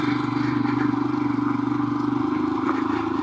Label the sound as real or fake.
real